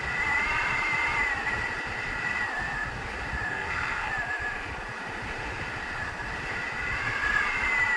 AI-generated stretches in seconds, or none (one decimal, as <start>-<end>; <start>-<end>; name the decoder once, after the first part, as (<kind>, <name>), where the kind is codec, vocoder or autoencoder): 3.5-4.1 (codec, SNAC)